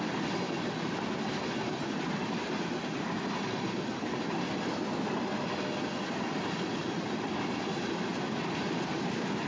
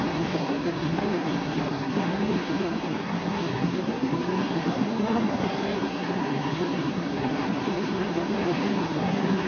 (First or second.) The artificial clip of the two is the second